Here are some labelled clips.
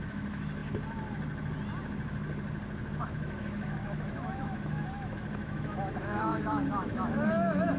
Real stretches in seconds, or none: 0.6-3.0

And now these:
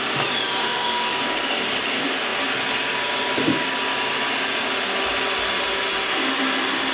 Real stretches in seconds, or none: 0.0-0.6; 1.1-6.9